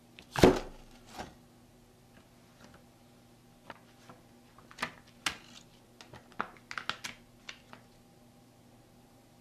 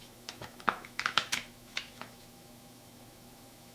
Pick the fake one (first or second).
second